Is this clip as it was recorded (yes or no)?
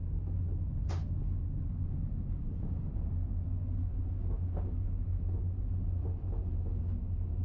yes